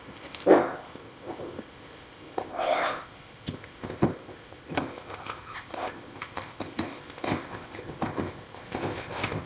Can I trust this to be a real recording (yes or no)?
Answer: no